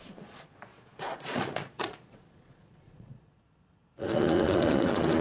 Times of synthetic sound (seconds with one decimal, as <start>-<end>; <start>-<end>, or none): 0.0-5.2